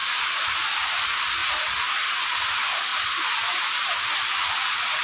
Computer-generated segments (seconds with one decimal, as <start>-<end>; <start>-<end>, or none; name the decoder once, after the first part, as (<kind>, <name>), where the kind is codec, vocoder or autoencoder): none